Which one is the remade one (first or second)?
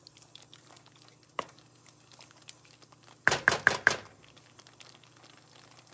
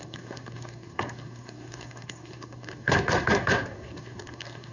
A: second